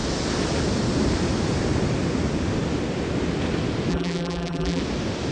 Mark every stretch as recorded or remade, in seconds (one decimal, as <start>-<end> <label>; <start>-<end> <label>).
0.0-3.9 recorded; 3.9-4.8 remade; 4.8-5.3 recorded